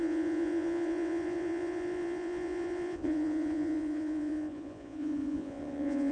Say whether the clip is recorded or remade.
remade